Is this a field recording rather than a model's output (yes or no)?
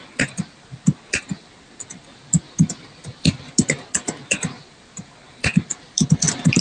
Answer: no